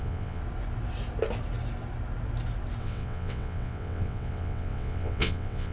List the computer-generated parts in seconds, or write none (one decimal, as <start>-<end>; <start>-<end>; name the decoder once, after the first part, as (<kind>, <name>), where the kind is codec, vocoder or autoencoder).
0.0-0.4 (vocoder, WaveNeXt); 2.8-5.7